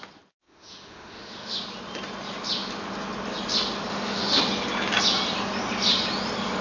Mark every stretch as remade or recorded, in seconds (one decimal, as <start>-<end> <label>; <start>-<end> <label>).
0.0-0.4 recorded; 0.4-1.6 remade; 1.6-3.9 recorded; 3.9-4.4 remade; 4.4-6.6 recorded